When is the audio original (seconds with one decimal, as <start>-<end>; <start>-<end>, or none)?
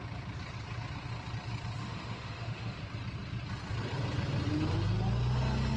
0.0-1.8; 2.8-5.8